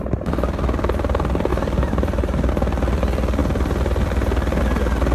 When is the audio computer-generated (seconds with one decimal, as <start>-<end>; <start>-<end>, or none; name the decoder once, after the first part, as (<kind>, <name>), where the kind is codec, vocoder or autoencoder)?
1.5-2.5 (vocoder, BigVGAN v2)